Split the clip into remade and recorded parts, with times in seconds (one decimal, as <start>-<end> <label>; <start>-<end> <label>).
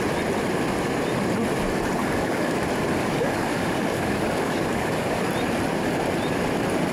0.0-2.0 recorded; 2.0-2.6 remade; 2.6-3.0 recorded; 3.0-5.3 remade; 5.3-6.9 recorded